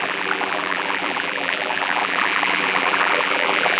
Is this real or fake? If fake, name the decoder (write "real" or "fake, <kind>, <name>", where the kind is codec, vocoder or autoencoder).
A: fake, vocoder, BigVGAN v2